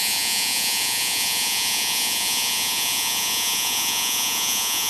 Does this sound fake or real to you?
fake